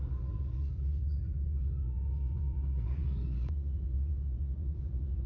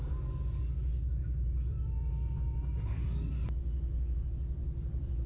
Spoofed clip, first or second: first